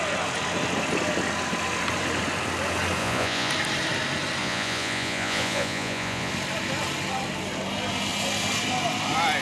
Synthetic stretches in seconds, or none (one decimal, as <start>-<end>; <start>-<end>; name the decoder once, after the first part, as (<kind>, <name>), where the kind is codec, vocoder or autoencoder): 3.0-3.5 (vocoder, Vocos); 4.4-6.3